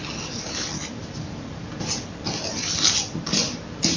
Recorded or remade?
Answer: recorded